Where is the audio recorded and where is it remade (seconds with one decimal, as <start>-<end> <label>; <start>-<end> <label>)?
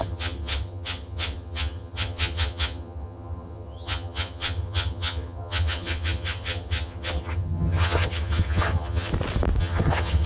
0.0-9.1 remade; 9.1-9.6 recorded; 9.6-10.3 remade